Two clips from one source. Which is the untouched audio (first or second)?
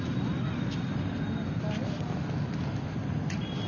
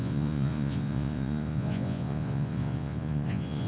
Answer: first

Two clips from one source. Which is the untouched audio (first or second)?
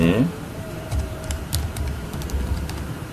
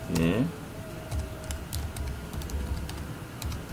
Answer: second